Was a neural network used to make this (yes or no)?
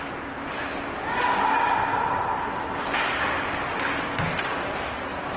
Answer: no